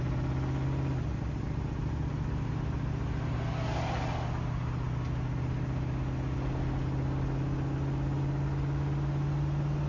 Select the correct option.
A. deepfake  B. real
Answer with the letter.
B